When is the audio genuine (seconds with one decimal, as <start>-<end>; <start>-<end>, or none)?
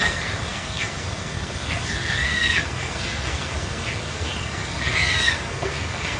none